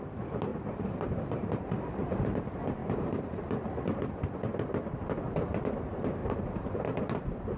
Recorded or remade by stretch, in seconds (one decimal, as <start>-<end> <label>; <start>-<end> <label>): 0.0-0.5 recorded; 0.5-2.4 remade; 2.4-2.8 recorded; 2.8-3.4 remade; 3.4-6.2 recorded; 6.2-7.0 remade; 7.0-7.6 recorded